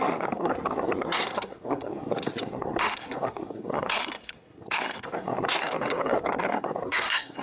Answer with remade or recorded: remade